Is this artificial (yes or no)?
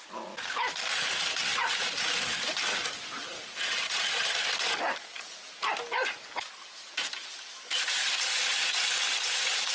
no